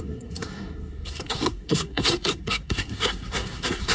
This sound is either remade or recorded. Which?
remade